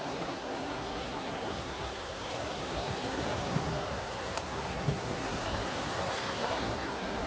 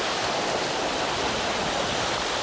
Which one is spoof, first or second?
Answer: first